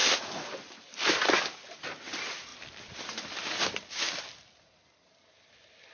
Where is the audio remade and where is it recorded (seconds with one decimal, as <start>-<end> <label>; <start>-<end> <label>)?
0.0-5.9 recorded